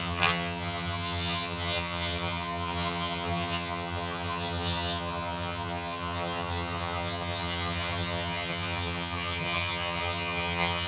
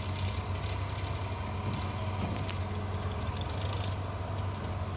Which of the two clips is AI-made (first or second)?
first